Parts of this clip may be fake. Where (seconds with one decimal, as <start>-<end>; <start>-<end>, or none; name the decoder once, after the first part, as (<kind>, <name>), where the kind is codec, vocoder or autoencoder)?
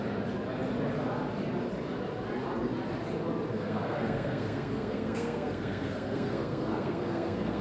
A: 3.5-7.6 (codec, SNAC)